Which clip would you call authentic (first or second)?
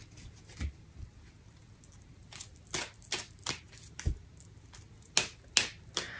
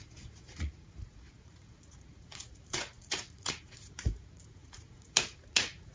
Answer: first